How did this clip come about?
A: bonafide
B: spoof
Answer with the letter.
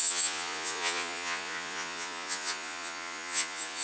B